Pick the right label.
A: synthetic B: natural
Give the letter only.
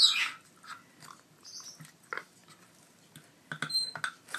B